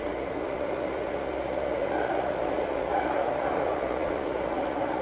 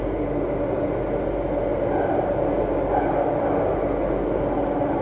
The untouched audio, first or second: second